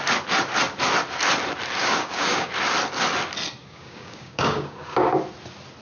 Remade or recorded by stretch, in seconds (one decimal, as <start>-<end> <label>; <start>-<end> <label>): 0.0-1.8 recorded; 1.8-2.5 remade; 2.5-3.6 recorded; 3.6-5.1 remade; 5.1-5.8 recorded